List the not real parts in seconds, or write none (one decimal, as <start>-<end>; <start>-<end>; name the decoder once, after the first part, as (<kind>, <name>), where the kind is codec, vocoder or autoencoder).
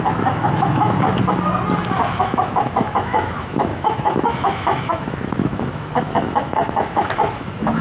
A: 0.0-1.1 (autoencoder, DAC-VAE); 2.2-7.8